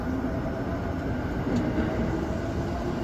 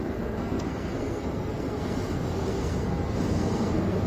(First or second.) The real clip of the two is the first